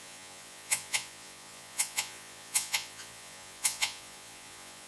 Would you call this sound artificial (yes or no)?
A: yes